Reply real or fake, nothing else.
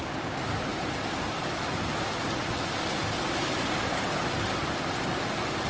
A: real